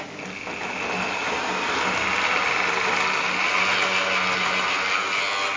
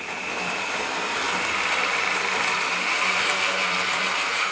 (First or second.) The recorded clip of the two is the first